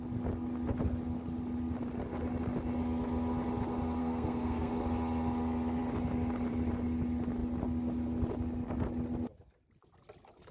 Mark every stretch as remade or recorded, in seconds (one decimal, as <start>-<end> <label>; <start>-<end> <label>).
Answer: 0.0-4.0 recorded; 4.0-4.7 remade; 4.7-10.5 recorded